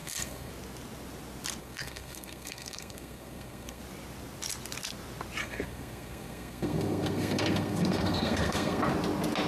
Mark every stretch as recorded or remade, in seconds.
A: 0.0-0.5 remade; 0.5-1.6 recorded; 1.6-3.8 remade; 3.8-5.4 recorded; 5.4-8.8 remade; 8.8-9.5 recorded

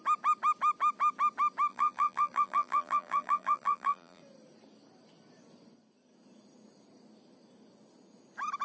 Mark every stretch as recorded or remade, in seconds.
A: 0.0-1.7 recorded; 1.7-4.2 remade; 4.2-8.6 recorded

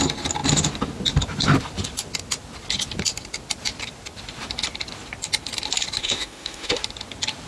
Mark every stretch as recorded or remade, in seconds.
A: 0.0-6.0 recorded; 6.0-6.8 remade; 6.8-7.5 recorded

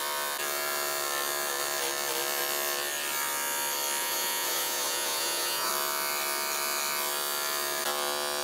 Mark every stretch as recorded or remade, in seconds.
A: 0.0-4.0 recorded; 4.0-5.7 remade; 5.7-8.4 recorded

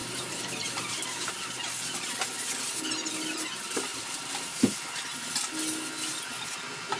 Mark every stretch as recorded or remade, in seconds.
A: 0.0-1.4 remade; 1.4-3.9 recorded; 3.9-4.8 remade; 4.8-7.0 recorded

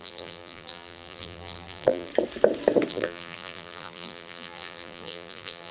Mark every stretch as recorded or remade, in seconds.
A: 0.0-2.1 remade; 2.1-2.9 recorded; 2.9-5.7 remade

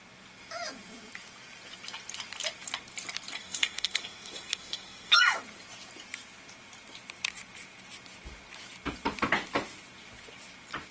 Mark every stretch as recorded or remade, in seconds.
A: 0.0-3.4 recorded; 3.4-5.2 remade; 5.2-10.9 recorded

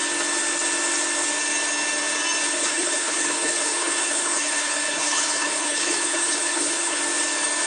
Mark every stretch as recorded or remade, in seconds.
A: 0.0-2.5 recorded; 2.5-7.0 remade; 7.0-7.7 recorded